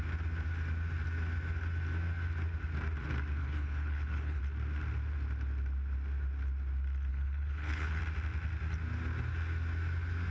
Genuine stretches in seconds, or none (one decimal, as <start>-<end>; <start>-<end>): 0.0-3.4; 4.4-7.1; 8.0-10.3